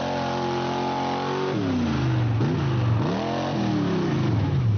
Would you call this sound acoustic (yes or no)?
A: yes